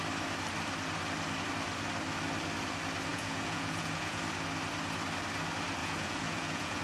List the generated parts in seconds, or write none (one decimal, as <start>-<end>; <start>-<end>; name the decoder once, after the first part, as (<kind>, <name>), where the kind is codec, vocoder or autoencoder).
3.1-4.2 (vocoder, Vocos); 5.8-6.8